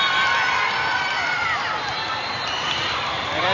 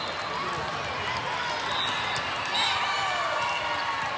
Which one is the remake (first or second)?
first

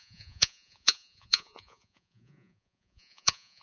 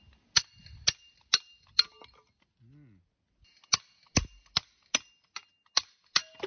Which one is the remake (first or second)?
first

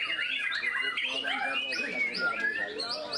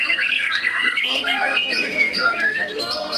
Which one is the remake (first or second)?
second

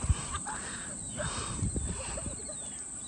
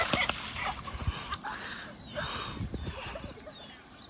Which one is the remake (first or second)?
first